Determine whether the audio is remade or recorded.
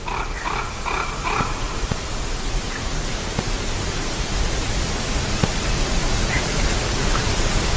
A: remade